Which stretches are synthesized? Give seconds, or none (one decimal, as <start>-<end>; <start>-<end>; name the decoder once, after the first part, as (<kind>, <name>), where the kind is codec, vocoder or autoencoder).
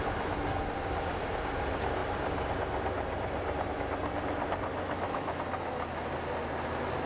4.7-5.4 (autoencoder, DAC-VAE)